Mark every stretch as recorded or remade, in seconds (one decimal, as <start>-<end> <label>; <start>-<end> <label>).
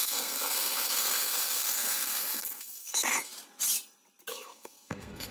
0.0-3.3 remade; 3.3-4.3 recorded; 4.3-5.3 remade